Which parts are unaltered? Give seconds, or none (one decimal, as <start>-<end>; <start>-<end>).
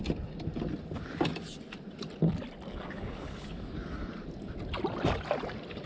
0.0-2.7; 4.1-5.9